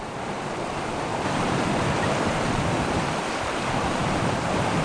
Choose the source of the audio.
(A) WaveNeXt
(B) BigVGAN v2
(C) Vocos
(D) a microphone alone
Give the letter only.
B